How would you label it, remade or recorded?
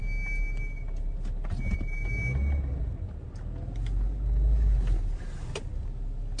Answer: recorded